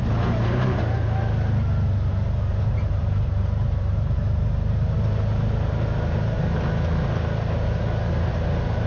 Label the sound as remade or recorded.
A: recorded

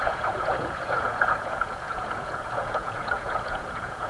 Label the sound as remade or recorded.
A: remade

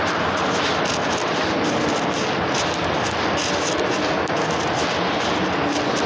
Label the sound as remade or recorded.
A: recorded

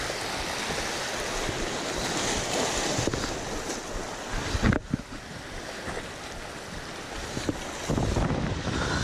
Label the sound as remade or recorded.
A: recorded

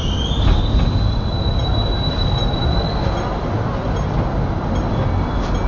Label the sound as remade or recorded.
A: recorded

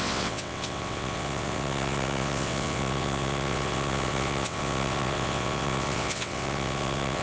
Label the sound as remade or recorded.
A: remade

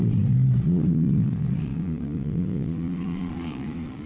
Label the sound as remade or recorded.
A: remade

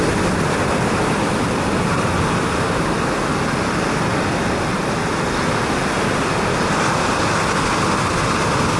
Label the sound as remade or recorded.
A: recorded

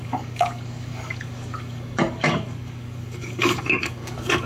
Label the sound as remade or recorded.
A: remade